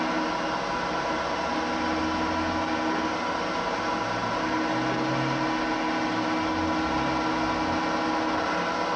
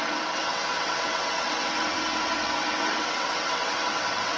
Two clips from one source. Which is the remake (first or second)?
second